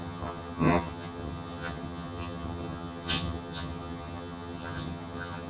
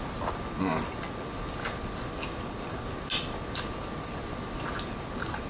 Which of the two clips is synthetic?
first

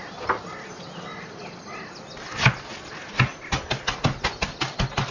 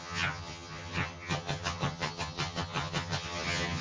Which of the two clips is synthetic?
second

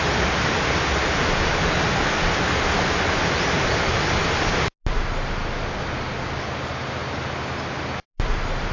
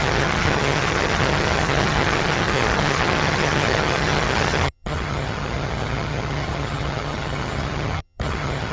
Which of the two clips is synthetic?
second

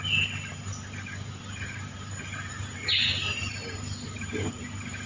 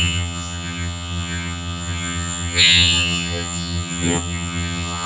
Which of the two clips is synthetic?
second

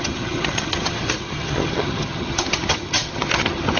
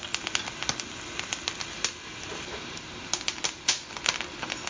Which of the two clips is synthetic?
first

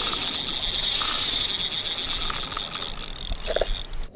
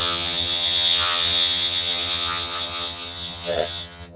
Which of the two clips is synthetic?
second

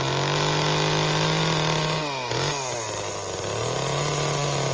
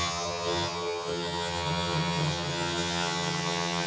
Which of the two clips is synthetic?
second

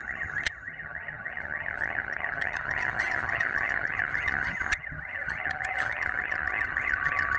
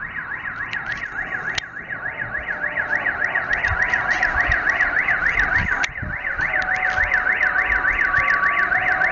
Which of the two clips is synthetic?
first